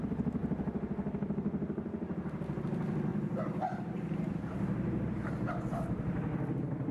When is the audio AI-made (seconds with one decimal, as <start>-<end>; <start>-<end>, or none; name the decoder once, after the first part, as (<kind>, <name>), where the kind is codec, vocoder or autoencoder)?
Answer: 3.1-5.5 (vocoder, BigVGAN v2)